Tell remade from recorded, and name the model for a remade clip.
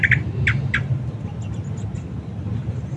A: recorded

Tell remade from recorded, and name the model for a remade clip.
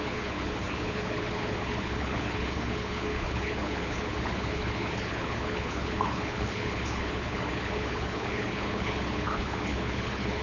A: remade, codec, HILCodec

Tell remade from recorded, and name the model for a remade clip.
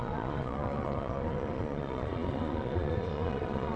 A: remade, vocoder, Vocos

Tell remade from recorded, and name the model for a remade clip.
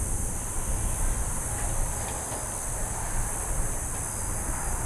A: recorded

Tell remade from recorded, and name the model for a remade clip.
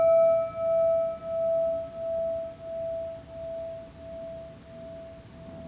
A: recorded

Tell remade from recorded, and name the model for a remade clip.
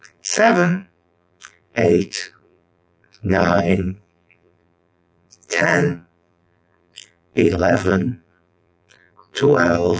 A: remade, vocoder, BigVGAN v2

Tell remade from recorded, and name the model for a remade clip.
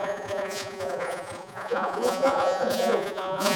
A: remade, vocoder, Vocos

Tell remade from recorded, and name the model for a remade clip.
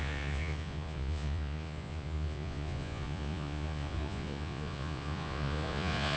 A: remade, vocoder, Vocos